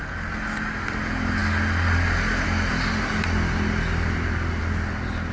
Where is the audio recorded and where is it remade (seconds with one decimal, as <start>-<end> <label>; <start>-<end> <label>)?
0.0-5.3 recorded